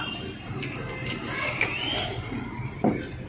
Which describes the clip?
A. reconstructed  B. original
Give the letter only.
B